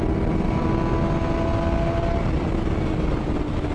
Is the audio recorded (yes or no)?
yes